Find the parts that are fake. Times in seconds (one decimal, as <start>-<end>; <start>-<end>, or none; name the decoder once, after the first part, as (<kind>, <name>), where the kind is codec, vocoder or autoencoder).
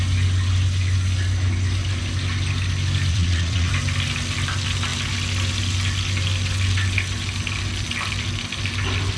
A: 3.1-3.7 (vocoder, Vocos)